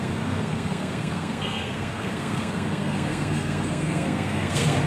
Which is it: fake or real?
fake